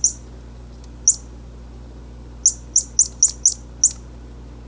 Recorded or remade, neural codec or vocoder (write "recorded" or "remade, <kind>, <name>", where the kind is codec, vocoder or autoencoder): recorded